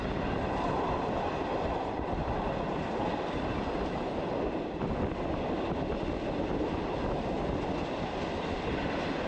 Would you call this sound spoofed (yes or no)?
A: no